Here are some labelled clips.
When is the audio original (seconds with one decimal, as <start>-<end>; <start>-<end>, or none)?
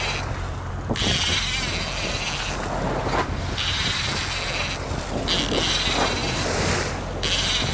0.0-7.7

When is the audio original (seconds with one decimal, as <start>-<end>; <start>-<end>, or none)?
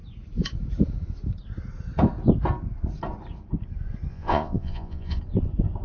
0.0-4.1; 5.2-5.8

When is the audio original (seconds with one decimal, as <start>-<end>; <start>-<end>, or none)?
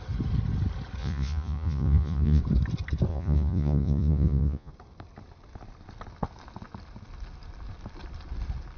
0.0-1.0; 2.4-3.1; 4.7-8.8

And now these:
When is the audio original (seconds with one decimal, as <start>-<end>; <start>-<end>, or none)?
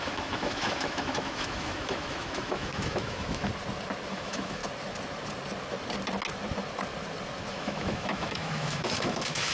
3.5-4.1; 4.6-7.5